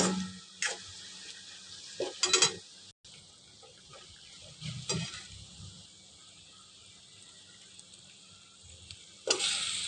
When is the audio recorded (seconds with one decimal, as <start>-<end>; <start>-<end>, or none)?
0.0-9.9